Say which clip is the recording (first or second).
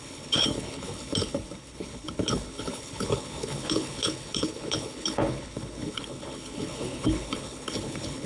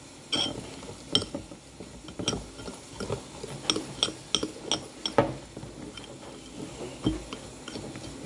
second